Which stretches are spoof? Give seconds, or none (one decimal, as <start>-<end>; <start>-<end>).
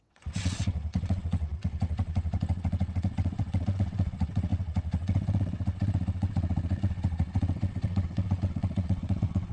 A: 0.0-9.5